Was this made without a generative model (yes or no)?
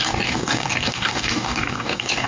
no